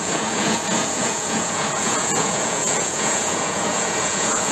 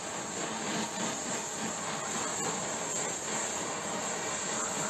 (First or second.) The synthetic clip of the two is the first